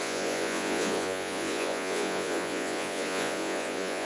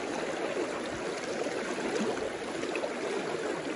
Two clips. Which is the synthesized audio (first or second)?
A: first